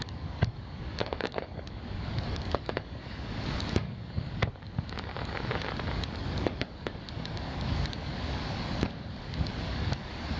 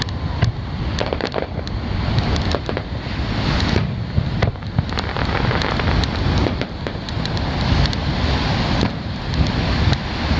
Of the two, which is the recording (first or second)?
second